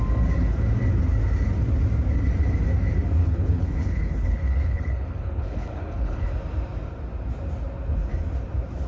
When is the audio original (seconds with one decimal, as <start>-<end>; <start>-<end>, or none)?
0.0-3.2; 6.3-8.9